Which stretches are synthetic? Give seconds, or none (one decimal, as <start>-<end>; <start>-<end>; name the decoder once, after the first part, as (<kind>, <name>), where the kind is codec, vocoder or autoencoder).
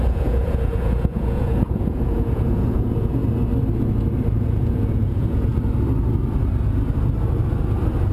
0.0-3.2 (vocoder, Vocos); 4.4-5.5